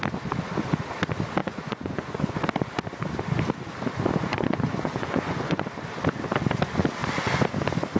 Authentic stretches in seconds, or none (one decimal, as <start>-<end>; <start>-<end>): 0.0-1.4; 2.4-4.3; 5.6-8.0